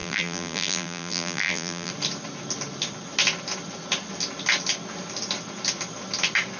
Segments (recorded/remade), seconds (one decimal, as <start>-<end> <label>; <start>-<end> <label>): 0.0-1.9 remade; 1.9-6.6 recorded